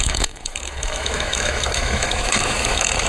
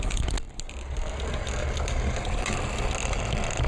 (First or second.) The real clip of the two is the second